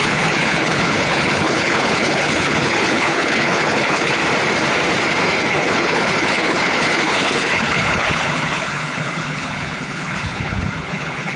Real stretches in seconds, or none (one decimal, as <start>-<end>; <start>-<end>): 4.2-5.5